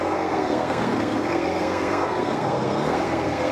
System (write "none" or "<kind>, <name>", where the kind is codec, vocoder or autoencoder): codec, SNAC